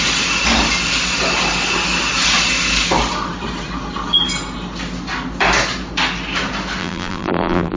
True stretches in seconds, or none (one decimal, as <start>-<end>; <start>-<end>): 0.0-6.8